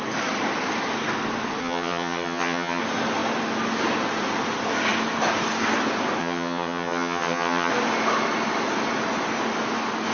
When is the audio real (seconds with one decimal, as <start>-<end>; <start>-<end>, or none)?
0.0-1.6; 2.8-6.2; 7.7-10.1